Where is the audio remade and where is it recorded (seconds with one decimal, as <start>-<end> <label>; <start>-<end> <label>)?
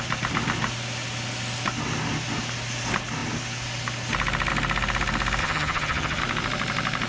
0.0-5.4 recorded; 5.4-6.2 remade; 6.2-7.1 recorded